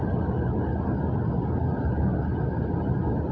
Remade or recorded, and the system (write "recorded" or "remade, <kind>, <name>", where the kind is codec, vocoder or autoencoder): recorded